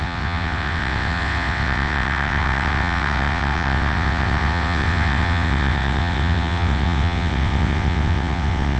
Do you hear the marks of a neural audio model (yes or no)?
yes